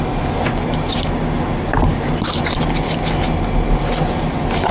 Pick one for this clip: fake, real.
real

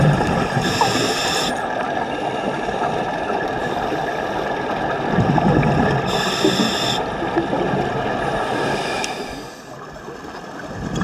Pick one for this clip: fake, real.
real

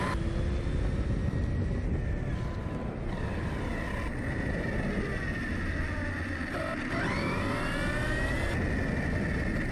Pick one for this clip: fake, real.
real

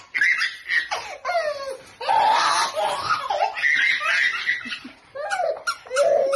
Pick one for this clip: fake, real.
real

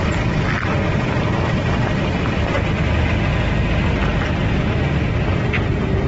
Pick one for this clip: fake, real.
real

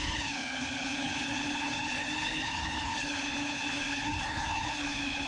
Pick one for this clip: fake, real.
fake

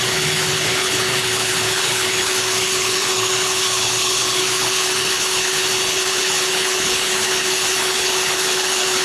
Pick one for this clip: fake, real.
fake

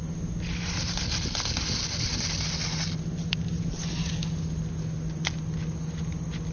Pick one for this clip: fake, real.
real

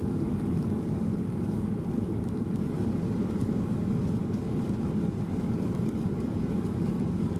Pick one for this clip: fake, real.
fake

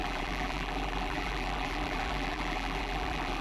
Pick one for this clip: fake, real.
fake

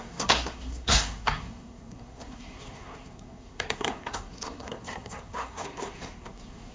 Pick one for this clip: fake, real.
fake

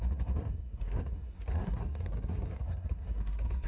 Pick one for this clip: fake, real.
fake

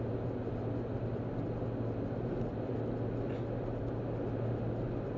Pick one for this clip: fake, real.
real